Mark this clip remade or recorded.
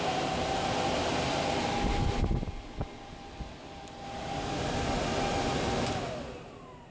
recorded